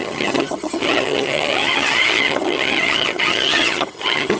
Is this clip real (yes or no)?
no